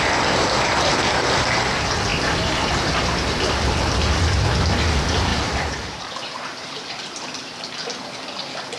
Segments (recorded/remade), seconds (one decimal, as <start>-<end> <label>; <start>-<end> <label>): 0.0-0.9 recorded; 0.9-1.4 remade; 1.4-5.3 recorded; 5.3-7.8 remade; 7.8-8.8 recorded